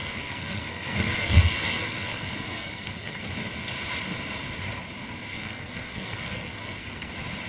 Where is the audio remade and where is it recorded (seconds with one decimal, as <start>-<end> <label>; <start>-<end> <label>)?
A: 0.0-3.3 remade; 3.3-5.3 recorded; 5.3-7.1 remade; 7.1-7.5 recorded